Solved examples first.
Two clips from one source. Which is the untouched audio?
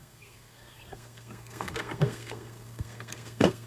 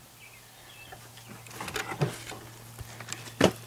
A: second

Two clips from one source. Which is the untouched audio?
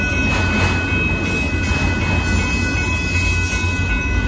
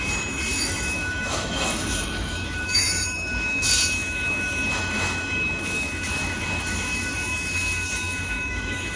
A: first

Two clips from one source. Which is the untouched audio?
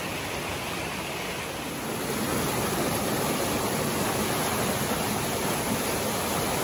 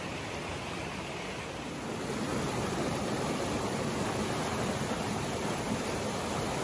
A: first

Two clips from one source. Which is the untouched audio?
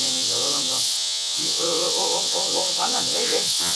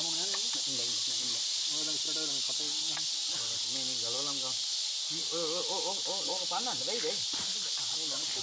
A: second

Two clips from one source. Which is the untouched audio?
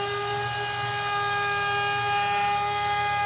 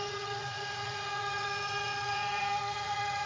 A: first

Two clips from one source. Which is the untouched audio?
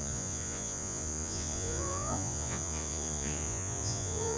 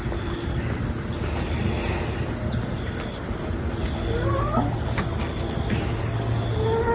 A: second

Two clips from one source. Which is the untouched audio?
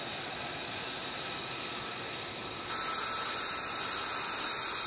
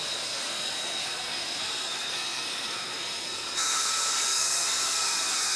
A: first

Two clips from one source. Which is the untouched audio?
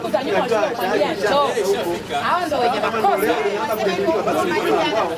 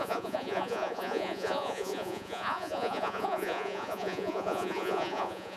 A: first